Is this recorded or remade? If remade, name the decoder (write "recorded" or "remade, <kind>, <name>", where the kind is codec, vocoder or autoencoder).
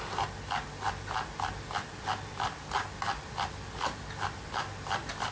recorded